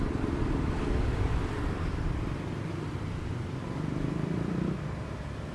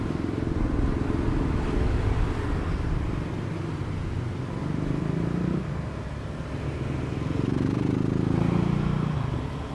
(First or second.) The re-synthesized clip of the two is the first